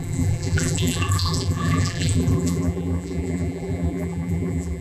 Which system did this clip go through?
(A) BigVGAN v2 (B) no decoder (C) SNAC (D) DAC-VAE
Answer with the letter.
A